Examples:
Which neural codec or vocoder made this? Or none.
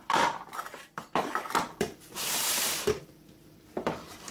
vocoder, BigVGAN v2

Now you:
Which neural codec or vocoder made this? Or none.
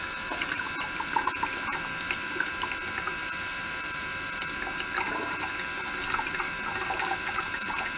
vocoder, BigVGAN v2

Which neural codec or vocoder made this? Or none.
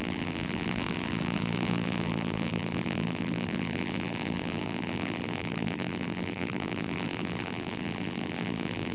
vocoder, BigVGAN v2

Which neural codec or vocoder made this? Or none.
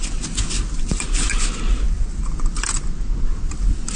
none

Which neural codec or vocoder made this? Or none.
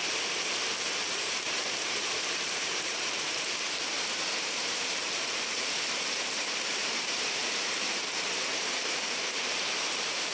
vocoder, BigVGAN v2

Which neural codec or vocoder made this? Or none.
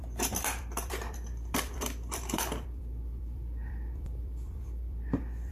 vocoder, BigVGAN v2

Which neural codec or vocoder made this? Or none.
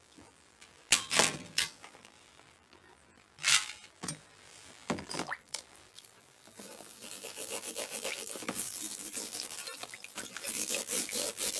vocoder, BigVGAN v2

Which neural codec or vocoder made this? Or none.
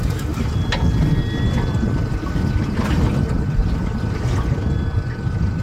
none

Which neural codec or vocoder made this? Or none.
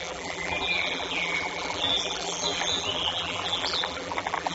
vocoder, BigVGAN v2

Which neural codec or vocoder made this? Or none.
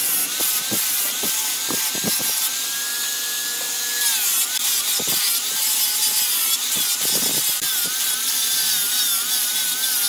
none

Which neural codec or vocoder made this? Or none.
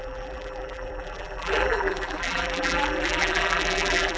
vocoder, BigVGAN v2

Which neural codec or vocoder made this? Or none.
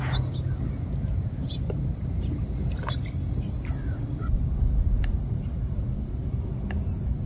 none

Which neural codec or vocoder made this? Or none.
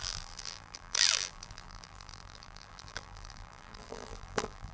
vocoder, BigVGAN v2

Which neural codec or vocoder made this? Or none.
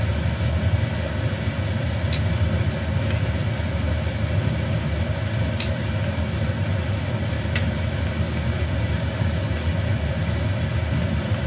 none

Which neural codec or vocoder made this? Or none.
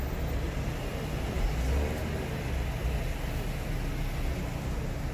none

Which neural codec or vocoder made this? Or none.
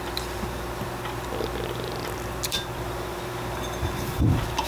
vocoder, BigVGAN v2